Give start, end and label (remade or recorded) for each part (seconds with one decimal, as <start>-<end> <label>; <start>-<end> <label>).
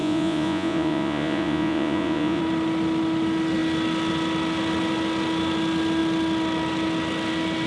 0.0-2.4 remade; 2.4-7.7 recorded